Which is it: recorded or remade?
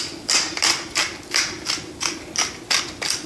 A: recorded